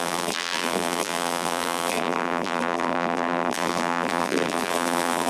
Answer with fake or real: fake